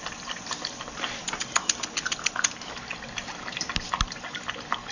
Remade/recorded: recorded